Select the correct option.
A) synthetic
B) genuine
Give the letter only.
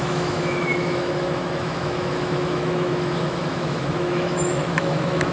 A